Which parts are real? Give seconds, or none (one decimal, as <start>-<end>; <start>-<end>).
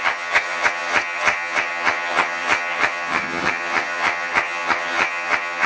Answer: none